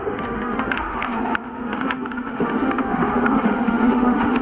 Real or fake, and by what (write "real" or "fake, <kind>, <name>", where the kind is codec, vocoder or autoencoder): fake, autoencoder, DAC-VAE